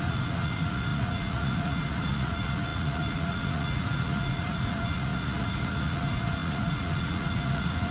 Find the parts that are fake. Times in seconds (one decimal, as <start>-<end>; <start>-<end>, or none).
0.0-7.9